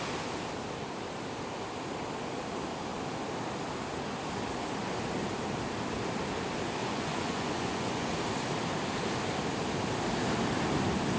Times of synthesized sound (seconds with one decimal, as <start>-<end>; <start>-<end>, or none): 6.8-8.1